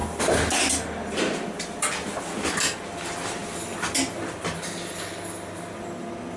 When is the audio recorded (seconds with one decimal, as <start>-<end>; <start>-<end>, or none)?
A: 0.0-6.4